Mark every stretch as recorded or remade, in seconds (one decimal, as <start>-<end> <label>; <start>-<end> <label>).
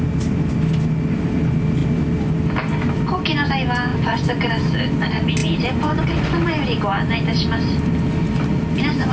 0.0-3.9 recorded; 3.9-4.5 remade; 4.5-5.4 recorded; 5.4-6.0 remade; 6.0-9.1 recorded